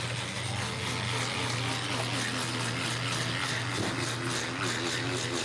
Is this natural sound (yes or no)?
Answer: yes